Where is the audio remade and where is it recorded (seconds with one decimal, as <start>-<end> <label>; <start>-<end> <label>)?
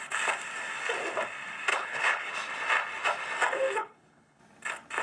0.0-1.7 recorded; 1.7-2.3 remade; 2.3-3.8 recorded; 3.8-4.4 remade; 4.4-5.0 recorded